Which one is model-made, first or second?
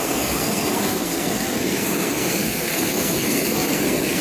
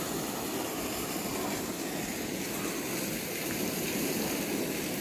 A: first